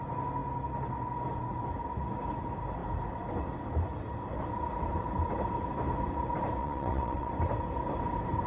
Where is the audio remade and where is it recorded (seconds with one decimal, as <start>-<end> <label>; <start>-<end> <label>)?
0.0-6.6 recorded; 6.6-7.3 remade; 7.3-8.5 recorded